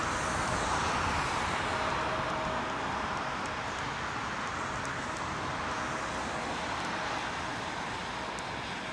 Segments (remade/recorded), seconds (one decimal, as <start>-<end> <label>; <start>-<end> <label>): 0.0-8.9 recorded

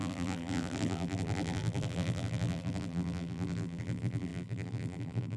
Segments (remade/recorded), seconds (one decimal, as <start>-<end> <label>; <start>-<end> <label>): 0.0-5.4 remade